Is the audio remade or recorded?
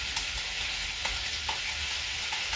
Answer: recorded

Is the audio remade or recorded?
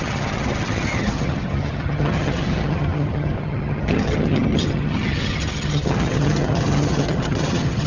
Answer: remade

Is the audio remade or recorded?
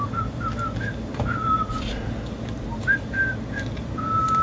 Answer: recorded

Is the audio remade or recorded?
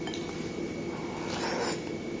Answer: recorded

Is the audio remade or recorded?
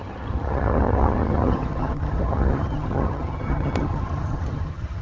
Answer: remade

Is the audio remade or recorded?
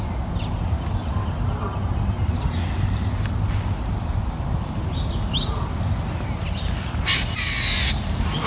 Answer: recorded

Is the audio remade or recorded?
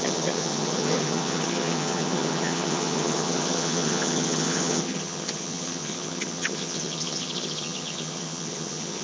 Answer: remade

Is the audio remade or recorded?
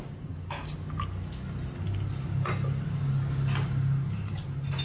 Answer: recorded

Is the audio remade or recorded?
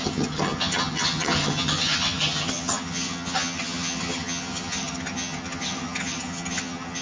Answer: remade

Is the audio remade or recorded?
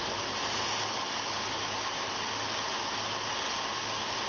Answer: recorded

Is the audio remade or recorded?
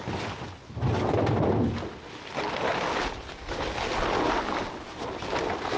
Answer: recorded